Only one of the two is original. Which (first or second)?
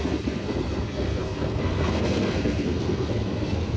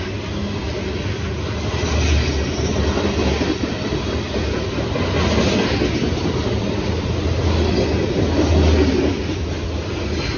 second